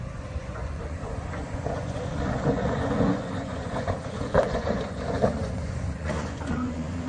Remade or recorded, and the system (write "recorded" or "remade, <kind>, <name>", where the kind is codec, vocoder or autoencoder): remade, vocoder, Vocos